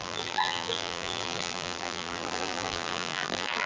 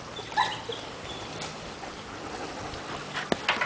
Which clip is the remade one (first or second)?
first